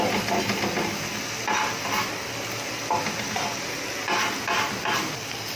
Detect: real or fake real